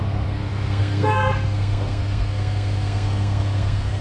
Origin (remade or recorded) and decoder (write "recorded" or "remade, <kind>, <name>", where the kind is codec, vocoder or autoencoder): remade, codec, SNAC